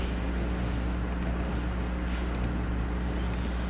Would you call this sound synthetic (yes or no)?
no